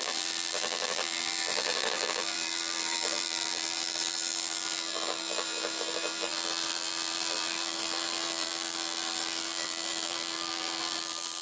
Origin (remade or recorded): remade